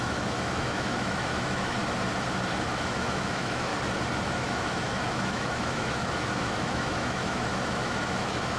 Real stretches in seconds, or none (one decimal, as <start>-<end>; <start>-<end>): 1.8-2.7; 3.7-4.3